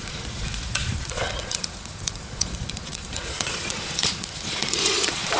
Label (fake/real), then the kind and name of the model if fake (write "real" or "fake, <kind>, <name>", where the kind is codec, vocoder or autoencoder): fake, vocoder, Vocos